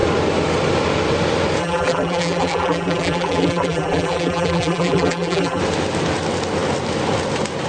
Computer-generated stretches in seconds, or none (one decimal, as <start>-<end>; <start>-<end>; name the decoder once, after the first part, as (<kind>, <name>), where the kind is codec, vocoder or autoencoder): 1.6-5.6 (vocoder, BigVGAN v2)